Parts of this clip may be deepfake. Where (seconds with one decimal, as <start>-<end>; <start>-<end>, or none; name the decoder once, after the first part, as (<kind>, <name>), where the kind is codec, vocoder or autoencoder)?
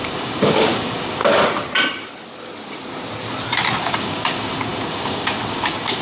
0.0-1.2 (codec, DAC); 3.8-6.0